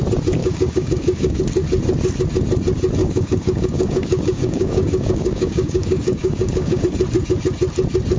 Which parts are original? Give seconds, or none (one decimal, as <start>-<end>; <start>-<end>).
0.0-0.4; 1.4-3.0; 6.8-8.2